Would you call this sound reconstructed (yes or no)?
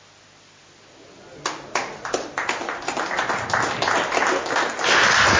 no